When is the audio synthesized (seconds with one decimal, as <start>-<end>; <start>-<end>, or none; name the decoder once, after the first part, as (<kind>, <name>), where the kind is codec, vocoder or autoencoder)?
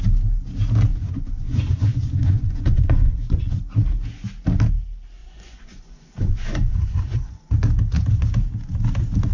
0.9-3.6 (vocoder, Vocos); 5.2-7.5